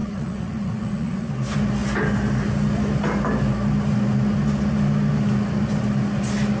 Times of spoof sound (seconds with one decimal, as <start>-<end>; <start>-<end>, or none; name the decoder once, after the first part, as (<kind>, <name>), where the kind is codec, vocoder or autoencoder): 0.0-1.3 (vocoder, Vocos)